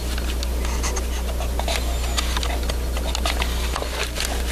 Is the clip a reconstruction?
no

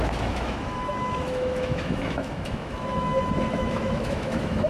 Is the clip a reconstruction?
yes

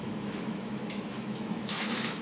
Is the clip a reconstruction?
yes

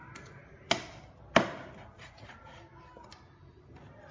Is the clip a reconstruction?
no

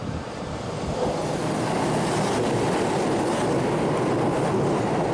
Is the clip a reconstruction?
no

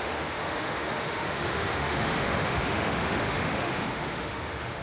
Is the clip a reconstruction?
yes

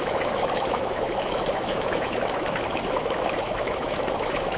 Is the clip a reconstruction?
yes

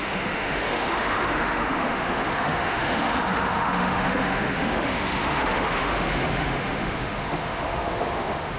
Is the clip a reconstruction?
yes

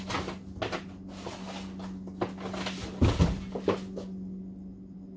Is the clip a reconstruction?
no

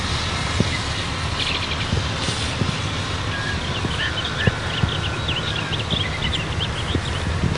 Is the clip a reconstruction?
no